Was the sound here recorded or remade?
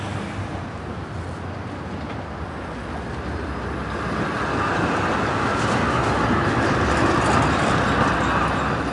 recorded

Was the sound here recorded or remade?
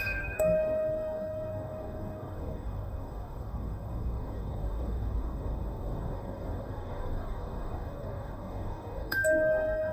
remade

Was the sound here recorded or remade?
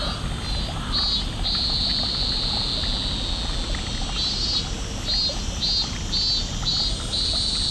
recorded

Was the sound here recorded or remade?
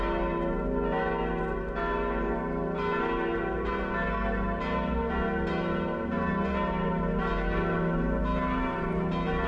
recorded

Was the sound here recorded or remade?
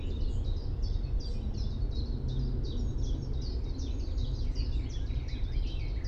recorded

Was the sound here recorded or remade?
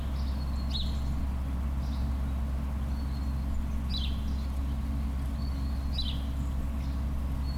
recorded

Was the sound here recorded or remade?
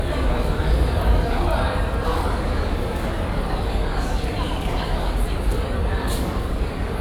remade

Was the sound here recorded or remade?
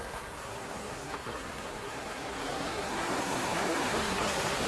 remade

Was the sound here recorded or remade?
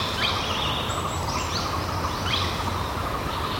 recorded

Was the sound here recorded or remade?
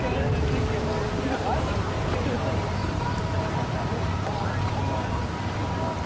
remade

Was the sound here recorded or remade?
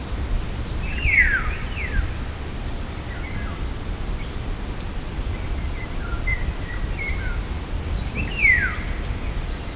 recorded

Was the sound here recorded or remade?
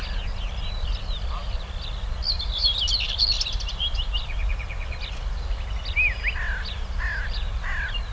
recorded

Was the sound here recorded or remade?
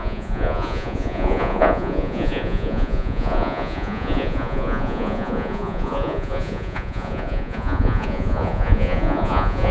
remade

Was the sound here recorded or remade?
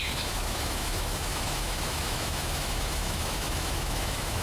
remade